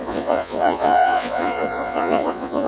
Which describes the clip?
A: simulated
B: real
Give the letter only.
A